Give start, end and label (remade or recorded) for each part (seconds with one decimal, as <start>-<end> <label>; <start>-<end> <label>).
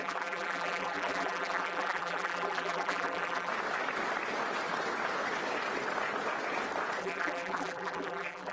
0.0-3.5 remade; 3.5-7.0 recorded; 7.0-8.5 remade